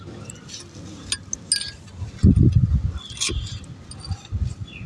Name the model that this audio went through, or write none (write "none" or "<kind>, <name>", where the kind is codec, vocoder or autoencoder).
none